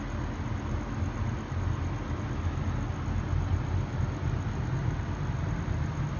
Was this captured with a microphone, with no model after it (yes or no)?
yes